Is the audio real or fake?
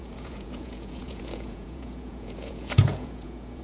fake